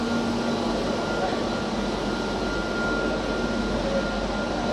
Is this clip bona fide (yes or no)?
yes